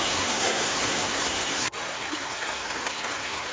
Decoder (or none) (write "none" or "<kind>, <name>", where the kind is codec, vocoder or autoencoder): codec, SNAC